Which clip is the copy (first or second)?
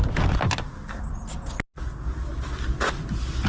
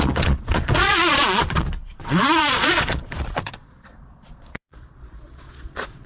second